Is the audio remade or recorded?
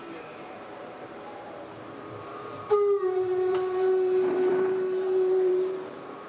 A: remade